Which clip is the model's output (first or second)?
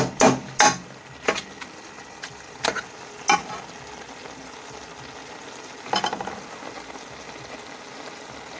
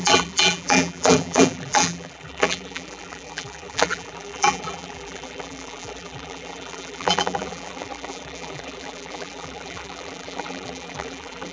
second